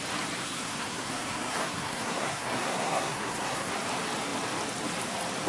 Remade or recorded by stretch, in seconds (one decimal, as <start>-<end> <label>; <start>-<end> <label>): 0.0-0.4 recorded; 0.4-3.7 remade; 3.7-5.5 recorded